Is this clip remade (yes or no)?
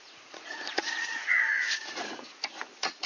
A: yes